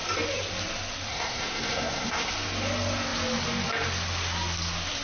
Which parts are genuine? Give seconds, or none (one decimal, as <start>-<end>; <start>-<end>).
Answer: 0.0-1.1; 2.3-5.0